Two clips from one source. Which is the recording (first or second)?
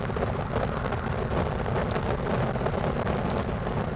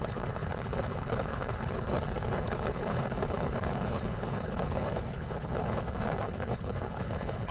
first